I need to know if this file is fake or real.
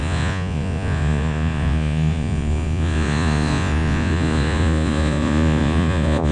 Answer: fake